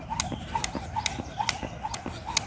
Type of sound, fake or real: real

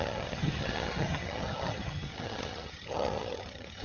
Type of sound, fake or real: fake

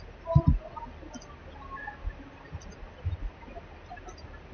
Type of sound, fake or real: real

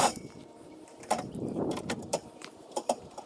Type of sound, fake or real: fake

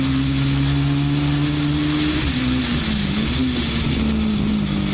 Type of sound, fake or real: real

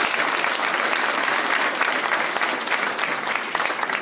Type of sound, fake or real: real